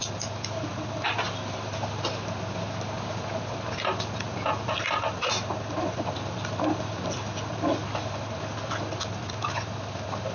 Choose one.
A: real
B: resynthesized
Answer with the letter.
A